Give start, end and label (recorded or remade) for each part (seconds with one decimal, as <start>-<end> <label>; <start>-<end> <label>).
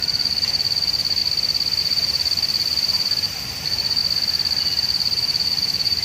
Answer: 0.0-1.2 remade; 1.2-1.8 recorded; 1.8-4.0 remade; 4.0-4.6 recorded; 4.6-6.0 remade